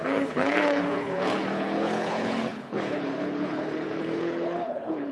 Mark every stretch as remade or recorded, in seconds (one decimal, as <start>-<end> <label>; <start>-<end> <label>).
0.0-5.1 remade